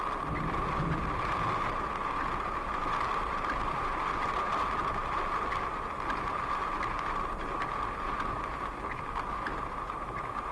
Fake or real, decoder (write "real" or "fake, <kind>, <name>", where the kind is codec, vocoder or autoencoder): real